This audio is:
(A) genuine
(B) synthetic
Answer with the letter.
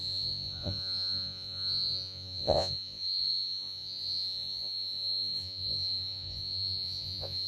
B